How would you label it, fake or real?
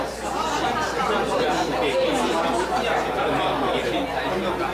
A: real